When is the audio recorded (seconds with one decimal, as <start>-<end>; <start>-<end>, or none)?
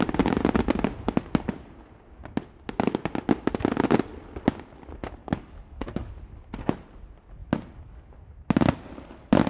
0.0-5.2; 6.1-9.5